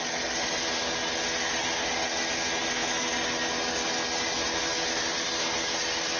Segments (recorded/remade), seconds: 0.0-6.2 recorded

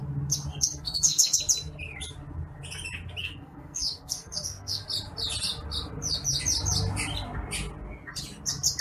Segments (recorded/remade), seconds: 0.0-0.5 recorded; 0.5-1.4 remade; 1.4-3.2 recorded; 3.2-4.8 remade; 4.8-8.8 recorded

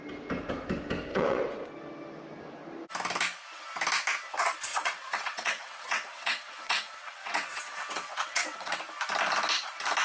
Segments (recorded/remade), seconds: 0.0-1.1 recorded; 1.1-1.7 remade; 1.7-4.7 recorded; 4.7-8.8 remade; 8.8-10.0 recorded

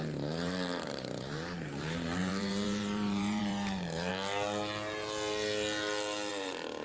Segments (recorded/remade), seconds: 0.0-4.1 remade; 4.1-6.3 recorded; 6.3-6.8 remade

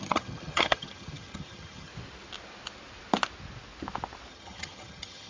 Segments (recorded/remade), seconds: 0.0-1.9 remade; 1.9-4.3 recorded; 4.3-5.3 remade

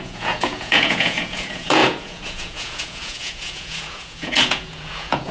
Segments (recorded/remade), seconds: 0.0-5.3 remade

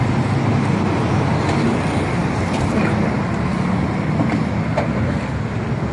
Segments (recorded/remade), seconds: 0.0-5.9 recorded

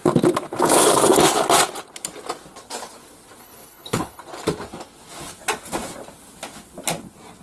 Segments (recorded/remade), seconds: 0.0-3.4 recorded; 3.4-4.2 remade; 4.2-7.4 recorded